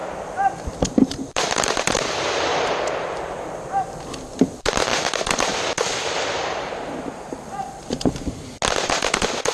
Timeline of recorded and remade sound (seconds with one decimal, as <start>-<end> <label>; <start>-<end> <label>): 0.0-2.0 remade; 2.0-2.5 recorded; 2.5-4.0 remade; 4.0-4.9 recorded; 4.9-6.7 remade; 6.7-9.5 recorded